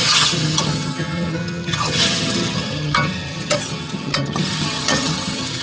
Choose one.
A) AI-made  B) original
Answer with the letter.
A